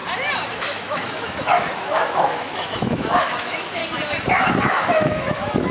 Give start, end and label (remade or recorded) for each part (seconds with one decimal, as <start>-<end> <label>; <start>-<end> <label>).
0.0-0.5 recorded; 0.5-3.8 remade; 3.8-4.6 recorded; 4.6-5.7 remade